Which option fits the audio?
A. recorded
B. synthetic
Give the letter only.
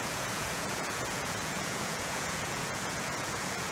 B